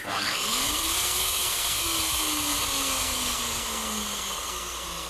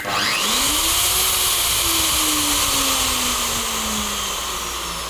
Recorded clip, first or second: second